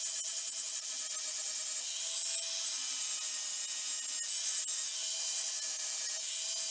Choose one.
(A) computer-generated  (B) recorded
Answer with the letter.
B